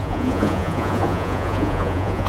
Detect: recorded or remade remade